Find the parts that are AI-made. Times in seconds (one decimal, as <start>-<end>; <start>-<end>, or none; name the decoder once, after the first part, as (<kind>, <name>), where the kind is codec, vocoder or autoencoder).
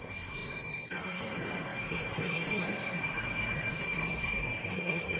0.0-5.2 (codec, SNAC)